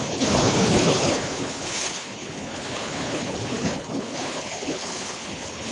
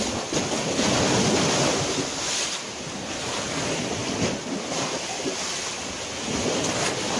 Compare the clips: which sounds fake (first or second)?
first